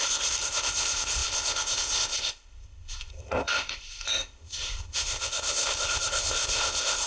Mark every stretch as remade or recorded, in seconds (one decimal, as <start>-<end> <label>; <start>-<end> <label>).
0.0-7.1 remade